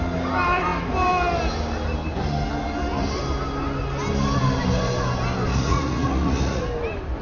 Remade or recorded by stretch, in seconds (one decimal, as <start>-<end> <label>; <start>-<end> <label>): 0.0-5.5 recorded; 5.5-6.6 remade; 6.6-7.2 recorded